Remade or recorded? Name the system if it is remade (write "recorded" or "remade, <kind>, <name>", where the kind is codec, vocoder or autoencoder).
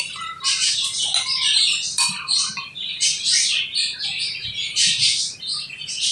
remade, vocoder, BigVGAN v2